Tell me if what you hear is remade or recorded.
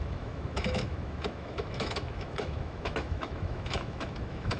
remade